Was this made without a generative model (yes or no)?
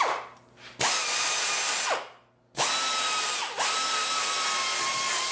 yes